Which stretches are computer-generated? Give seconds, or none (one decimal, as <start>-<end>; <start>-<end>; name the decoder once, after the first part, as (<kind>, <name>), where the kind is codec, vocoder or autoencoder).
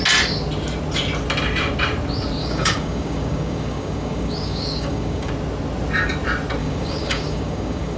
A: 2.4-5.3 (codec, DAC); 6.6-8.0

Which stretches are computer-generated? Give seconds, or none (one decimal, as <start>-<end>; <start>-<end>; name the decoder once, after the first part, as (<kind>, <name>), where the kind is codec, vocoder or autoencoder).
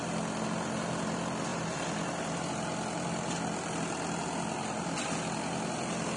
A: 1.5-2.4 (vocoder, BigVGAN v2)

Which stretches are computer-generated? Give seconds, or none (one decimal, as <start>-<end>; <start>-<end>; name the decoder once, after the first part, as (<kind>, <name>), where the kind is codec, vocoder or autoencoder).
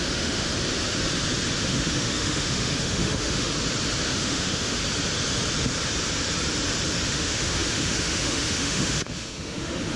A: 0.0-0.5 (autoencoder, DAC-VAE); 1.6-3.5; 4.1-4.8; 7.1-10.0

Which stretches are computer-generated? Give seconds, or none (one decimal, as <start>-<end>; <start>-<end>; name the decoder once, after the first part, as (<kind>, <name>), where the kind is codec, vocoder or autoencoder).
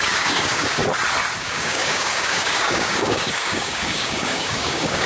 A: 0.0-0.8 (codec, DAC); 1.4-5.1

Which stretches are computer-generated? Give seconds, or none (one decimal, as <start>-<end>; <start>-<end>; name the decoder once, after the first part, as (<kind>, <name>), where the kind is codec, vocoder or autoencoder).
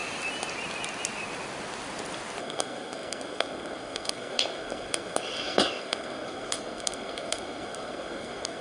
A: 2.4-8.6 (codec, SNAC)